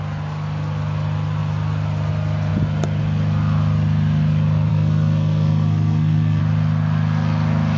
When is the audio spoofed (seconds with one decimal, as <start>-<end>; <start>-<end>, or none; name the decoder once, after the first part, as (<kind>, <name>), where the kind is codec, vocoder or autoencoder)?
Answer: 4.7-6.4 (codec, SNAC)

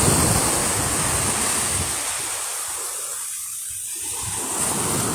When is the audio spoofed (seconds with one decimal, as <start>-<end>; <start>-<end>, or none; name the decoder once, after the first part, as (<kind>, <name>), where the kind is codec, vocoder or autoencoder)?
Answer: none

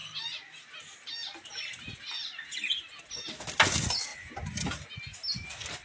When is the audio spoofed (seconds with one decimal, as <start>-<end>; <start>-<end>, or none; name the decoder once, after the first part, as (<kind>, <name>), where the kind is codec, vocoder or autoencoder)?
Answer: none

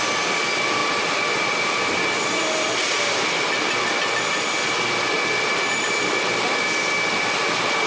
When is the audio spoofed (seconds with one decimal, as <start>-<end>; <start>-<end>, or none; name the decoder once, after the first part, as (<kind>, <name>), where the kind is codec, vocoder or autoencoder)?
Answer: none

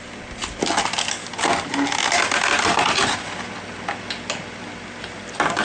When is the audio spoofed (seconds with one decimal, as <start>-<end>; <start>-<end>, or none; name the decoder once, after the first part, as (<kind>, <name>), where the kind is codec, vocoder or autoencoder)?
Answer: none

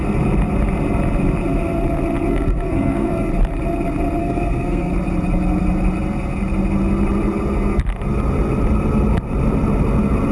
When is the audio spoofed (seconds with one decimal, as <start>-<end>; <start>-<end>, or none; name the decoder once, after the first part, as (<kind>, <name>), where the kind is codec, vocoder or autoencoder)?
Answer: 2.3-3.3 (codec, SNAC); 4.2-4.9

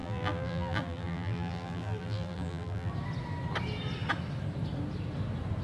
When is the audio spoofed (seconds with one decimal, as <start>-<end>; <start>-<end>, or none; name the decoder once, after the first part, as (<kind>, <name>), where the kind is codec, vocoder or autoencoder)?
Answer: 0.0-2.9 (vocoder, BigVGAN v2)